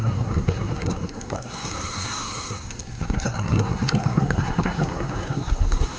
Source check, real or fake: fake